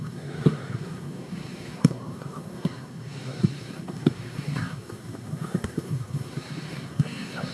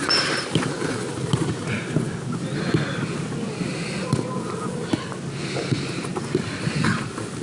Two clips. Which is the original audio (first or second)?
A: second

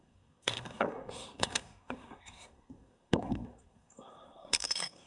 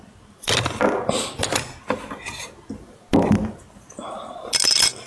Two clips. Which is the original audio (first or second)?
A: second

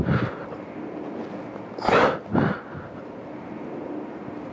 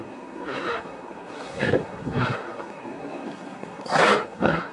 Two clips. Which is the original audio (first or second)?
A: first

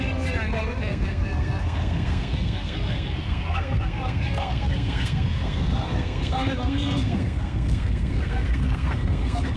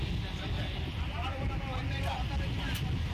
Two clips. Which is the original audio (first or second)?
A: second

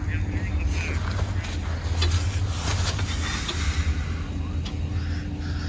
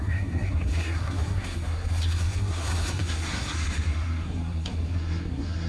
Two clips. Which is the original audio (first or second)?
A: first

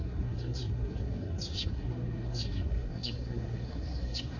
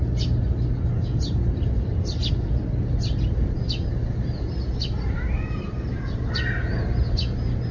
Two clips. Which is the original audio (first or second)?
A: second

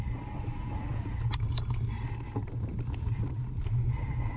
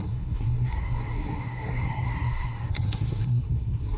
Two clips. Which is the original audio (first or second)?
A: first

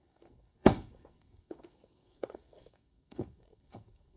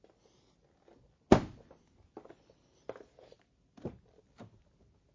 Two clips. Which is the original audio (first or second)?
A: second